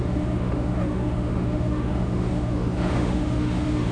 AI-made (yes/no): yes